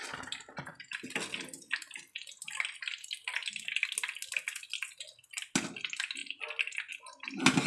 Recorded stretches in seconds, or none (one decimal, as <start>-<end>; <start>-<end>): 0.0-7.7